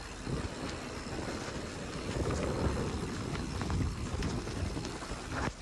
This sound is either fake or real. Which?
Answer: real